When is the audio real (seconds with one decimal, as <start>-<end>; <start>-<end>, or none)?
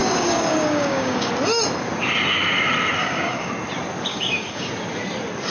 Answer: 1.3-3.0; 3.5-4.1; 4.7-5.5